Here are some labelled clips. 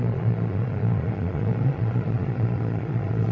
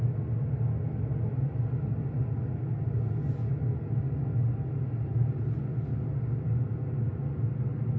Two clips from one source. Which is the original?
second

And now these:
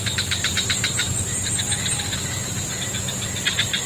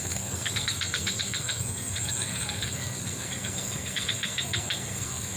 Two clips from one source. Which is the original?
first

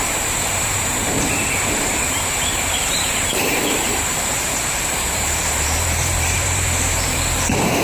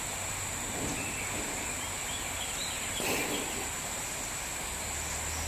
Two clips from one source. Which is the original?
second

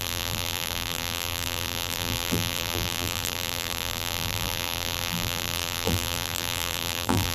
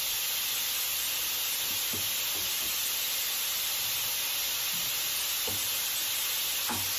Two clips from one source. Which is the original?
second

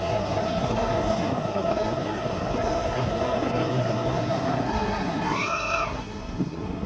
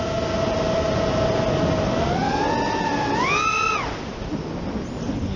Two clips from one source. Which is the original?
second